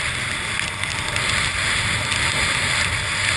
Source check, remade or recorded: recorded